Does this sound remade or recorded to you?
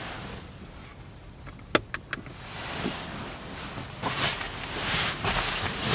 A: recorded